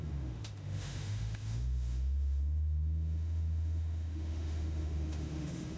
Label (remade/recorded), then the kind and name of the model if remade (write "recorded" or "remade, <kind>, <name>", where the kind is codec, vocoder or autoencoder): remade, autoencoder, DAC-VAE